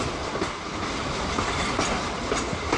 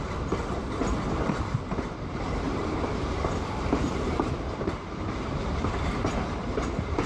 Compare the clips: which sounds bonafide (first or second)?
first